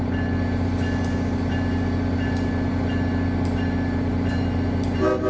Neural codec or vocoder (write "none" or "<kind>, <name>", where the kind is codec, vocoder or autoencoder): none